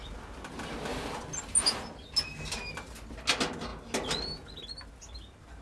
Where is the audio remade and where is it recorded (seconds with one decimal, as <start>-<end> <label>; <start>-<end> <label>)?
0.0-5.6 recorded